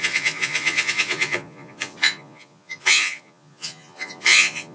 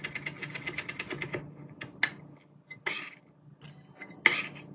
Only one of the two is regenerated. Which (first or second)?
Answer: first